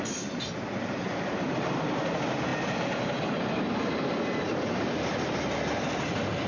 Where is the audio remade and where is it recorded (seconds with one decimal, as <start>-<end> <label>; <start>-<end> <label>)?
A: 0.0-6.5 recorded